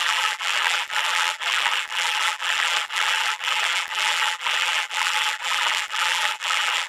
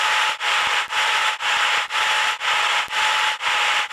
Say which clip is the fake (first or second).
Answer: first